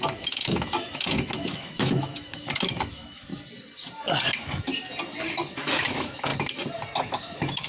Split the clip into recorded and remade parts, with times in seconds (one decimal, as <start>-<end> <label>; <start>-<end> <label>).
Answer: 0.0-3.3 remade; 3.3-4.3 recorded; 4.3-4.7 remade; 4.7-5.5 recorded; 5.5-6.3 remade; 6.3-7.0 recorded; 7.0-7.7 remade